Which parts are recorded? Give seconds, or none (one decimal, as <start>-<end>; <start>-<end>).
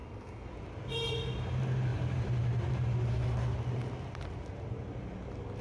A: 0.5-5.6